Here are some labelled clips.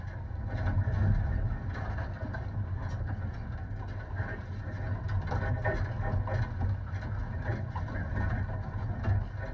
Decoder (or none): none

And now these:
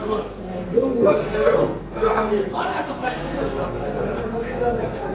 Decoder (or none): codec, SNAC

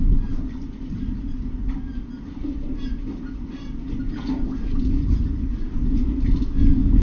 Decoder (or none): none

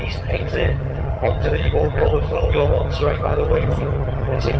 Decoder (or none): vocoder, HiFi-GAN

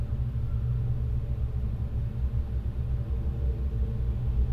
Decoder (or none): none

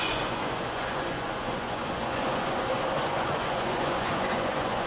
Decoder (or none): vocoder, Vocos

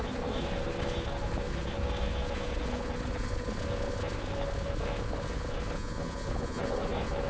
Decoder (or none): autoencoder, DAC-VAE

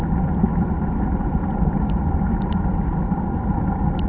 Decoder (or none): none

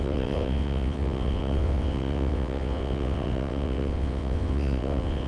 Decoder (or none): vocoder, WaveNeXt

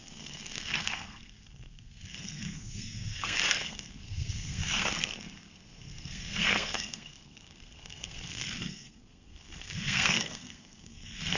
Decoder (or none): codec, SNAC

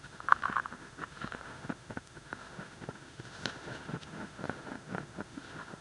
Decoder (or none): autoencoder, DAC-VAE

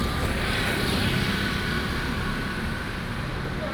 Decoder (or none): vocoder, BigVGAN v2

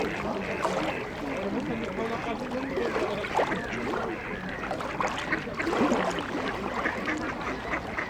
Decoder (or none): none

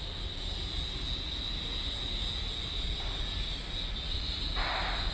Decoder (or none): none